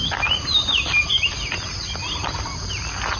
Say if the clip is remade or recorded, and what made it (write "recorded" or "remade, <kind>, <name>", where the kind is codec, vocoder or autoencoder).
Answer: recorded